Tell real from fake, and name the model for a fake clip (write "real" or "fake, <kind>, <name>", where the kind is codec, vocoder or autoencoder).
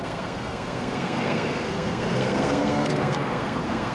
fake, codec, SNAC